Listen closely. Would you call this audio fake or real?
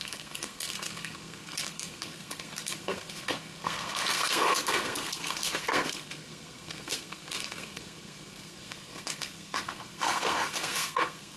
fake